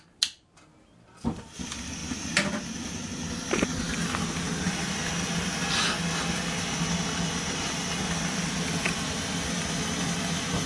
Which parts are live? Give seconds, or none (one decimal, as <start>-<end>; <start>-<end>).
0.0-10.7